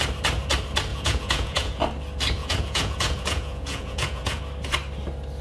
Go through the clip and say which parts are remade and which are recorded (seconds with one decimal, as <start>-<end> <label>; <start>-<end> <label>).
0.0-0.9 recorded; 0.9-1.8 remade; 1.8-2.4 recorded; 2.4-4.4 remade; 4.4-5.4 recorded